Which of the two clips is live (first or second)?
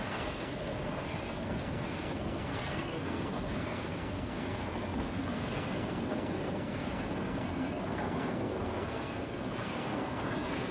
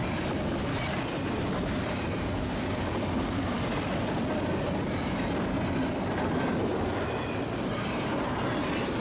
second